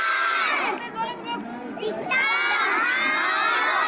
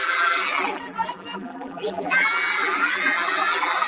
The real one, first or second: first